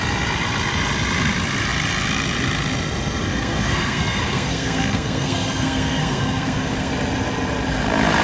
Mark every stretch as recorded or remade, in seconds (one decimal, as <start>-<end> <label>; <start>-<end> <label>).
0.0-3.3 recorded; 3.3-6.9 remade; 6.9-8.2 recorded

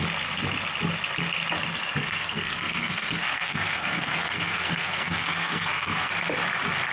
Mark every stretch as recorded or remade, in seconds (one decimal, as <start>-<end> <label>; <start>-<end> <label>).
0.0-2.0 recorded; 2.0-6.1 remade; 6.1-6.9 recorded

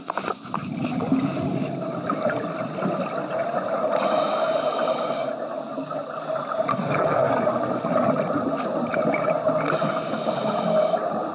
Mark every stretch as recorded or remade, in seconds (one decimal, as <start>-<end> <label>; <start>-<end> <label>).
0.0-6.7 recorded; 6.7-7.3 remade; 7.3-11.3 recorded

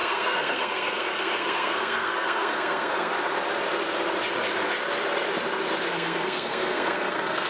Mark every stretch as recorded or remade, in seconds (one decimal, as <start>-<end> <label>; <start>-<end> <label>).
0.0-3.1 remade; 3.1-5.9 recorded; 5.9-7.5 remade

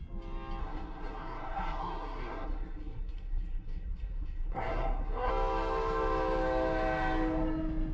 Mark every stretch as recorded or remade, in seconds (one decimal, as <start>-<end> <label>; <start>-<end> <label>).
0.0-0.6 recorded; 0.6-5.3 remade; 5.3-7.9 recorded

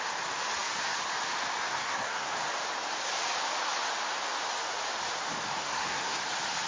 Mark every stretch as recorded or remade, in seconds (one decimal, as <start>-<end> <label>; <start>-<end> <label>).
0.0-1.7 recorded; 1.7-2.3 remade; 2.3-5.6 recorded; 5.6-6.2 remade; 6.2-6.7 recorded